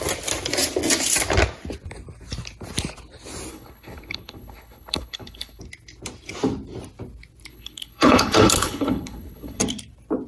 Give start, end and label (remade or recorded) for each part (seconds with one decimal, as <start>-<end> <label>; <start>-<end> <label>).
0.0-3.5 recorded; 3.5-5.6 remade; 5.6-7.5 recorded; 7.5-9.6 remade; 9.6-10.3 recorded